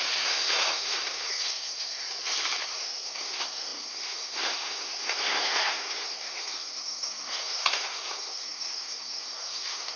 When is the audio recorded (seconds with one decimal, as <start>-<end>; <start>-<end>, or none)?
2.0-2.6